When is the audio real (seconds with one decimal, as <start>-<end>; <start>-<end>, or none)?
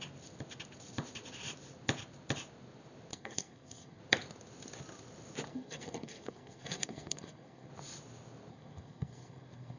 0.0-3.1; 4.0-5.5; 7.7-8.5